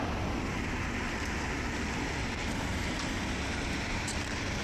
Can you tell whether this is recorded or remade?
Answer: remade